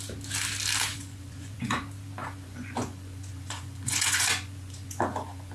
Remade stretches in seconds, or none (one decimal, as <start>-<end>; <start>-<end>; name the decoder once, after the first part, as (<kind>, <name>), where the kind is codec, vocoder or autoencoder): 0.9-1.8 (vocoder, Vocos); 2.2-5.5

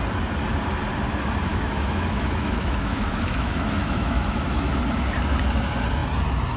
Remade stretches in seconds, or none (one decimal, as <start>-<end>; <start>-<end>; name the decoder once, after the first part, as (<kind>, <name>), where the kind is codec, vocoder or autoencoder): 1.5-4.7 (autoencoder, DAC-VAE)

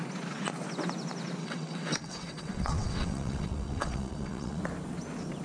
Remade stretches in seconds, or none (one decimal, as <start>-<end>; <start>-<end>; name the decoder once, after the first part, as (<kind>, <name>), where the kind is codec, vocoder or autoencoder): 1.4-4.6 (vocoder, WaveNeXt)

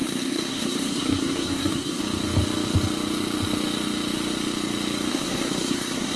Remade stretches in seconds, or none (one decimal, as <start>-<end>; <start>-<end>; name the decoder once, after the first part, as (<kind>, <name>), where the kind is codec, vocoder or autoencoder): 0.0-2.0 (codec, SNAC); 5.1-6.2

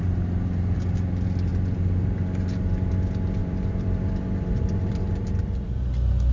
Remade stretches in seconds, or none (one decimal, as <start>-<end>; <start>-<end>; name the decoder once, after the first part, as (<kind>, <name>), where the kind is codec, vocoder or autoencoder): 3.4-6.3 (vocoder, BigVGAN v2)

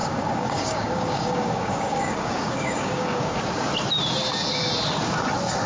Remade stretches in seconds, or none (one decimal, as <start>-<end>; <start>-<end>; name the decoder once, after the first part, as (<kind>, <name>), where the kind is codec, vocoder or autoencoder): 0.0-3.4 (codec, DAC)

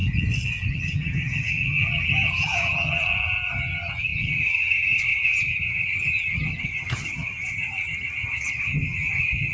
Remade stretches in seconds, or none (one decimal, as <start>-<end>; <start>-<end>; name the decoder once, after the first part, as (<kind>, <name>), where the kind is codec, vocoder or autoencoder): 0.7-3.0 (vocoder, HiFi-GAN); 3.5-9.5